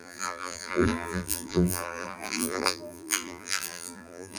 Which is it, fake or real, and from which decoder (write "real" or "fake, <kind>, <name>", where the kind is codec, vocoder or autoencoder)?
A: fake, vocoder, BigVGAN v2